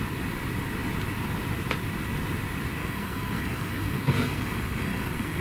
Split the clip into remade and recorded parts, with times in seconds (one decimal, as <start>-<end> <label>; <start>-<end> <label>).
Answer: 0.0-2.8 recorded; 2.8-5.4 remade